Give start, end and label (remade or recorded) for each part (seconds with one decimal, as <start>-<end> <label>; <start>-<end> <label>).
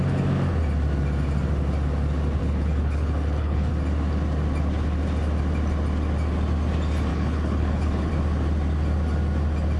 0.0-2.4 recorded; 2.4-3.7 remade; 3.7-7.1 recorded; 7.1-8.1 remade; 8.1-9.8 recorded